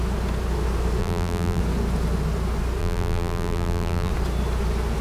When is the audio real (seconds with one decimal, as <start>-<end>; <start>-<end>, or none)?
0.0-1.0; 1.6-2.8; 4.1-5.0